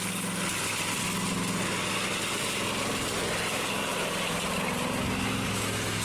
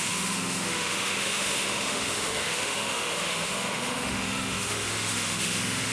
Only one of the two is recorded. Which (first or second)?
first